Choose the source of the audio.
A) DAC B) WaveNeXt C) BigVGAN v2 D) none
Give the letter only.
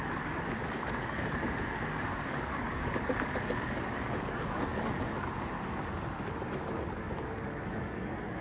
A